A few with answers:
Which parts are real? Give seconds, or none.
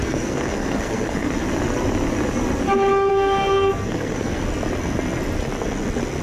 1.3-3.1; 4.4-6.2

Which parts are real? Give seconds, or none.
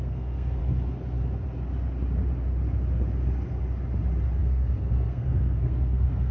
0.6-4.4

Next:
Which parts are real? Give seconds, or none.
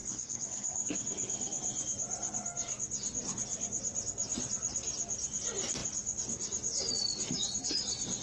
0.9-8.2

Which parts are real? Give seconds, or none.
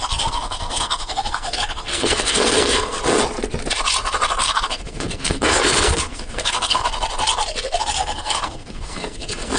3.0-4.4; 6.8-7.8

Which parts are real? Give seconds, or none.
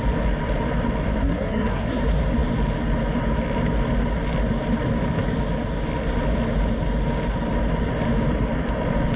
0.0-1.2; 2.0-9.2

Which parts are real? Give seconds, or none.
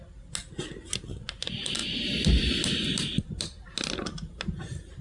0.0-5.0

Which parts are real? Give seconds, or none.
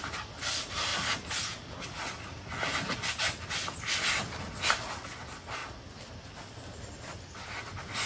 0.0-8.1